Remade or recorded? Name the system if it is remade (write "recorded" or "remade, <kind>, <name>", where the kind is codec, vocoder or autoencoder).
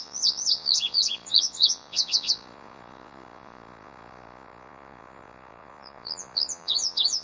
remade, vocoder, Vocos